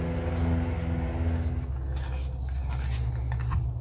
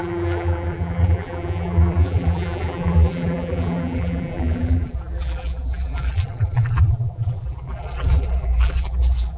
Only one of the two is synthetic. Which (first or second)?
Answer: second